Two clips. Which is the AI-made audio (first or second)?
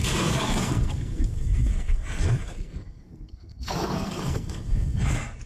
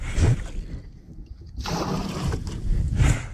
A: first